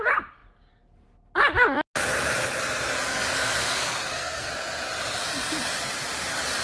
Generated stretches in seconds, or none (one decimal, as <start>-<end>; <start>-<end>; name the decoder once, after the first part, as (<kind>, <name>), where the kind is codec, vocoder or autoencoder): 3.1-4.5 (codec, SNAC)